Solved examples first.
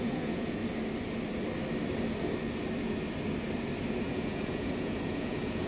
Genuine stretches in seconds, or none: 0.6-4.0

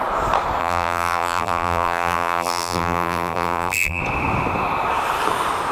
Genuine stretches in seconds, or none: 0.0-0.6; 4.0-5.7

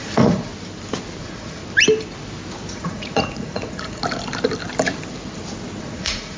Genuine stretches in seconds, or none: 0.5-1.2; 1.6-2.7; 4.0-5.8

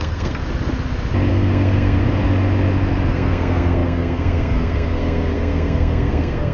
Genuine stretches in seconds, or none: 0.4-1.3; 2.0-3.1

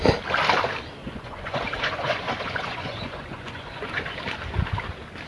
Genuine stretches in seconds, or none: 0.0-1.0; 4.2-5.3

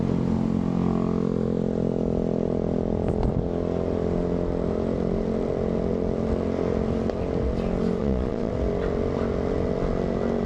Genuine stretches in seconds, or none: 0.0-8.0; 8.5-10.5

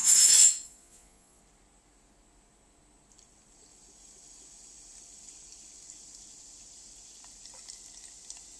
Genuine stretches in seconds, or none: 1.4-8.6

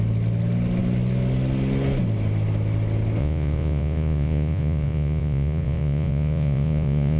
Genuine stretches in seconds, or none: 0.0-3.2